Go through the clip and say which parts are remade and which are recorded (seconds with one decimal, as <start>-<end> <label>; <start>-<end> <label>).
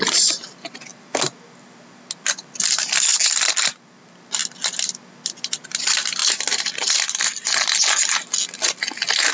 0.0-9.3 recorded